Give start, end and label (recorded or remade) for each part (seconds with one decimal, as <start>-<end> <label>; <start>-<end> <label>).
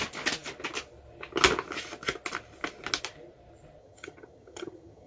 0.0-3.8 recorded; 3.8-5.1 remade